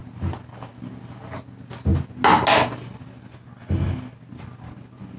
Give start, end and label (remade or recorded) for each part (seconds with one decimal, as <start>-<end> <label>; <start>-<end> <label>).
0.0-5.2 recorded